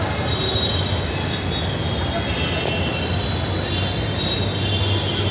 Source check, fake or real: real